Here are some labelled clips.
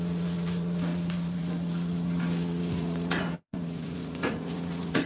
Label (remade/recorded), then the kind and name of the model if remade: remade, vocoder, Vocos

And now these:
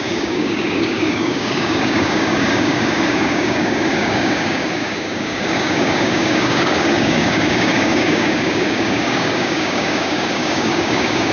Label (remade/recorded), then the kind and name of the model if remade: remade, codec, DAC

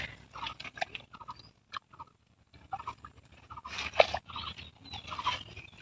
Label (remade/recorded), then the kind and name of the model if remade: recorded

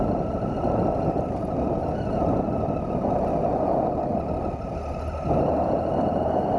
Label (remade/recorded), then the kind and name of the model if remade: recorded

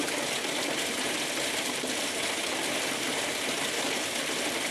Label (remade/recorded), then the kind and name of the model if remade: recorded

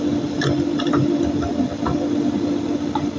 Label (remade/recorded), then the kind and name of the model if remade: recorded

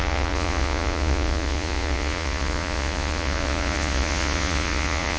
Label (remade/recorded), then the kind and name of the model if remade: remade, vocoder, Vocos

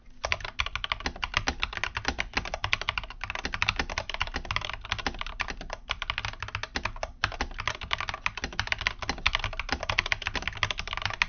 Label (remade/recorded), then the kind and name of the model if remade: recorded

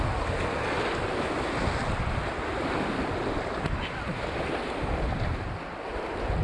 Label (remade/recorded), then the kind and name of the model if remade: recorded